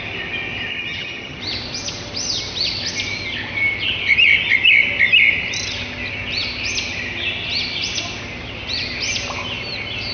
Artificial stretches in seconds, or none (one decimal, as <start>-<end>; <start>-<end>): 0.7-1.4